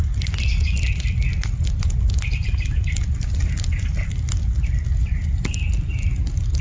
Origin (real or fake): real